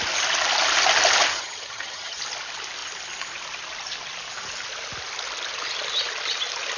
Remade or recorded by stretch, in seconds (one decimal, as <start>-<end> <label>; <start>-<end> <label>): 0.0-1.3 recorded; 1.3-2.2 remade; 2.2-6.8 recorded